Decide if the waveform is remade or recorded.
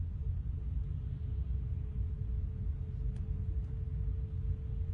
recorded